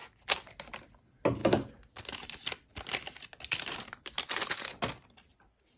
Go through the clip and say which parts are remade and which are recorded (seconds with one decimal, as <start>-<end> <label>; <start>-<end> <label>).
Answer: 0.0-5.8 recorded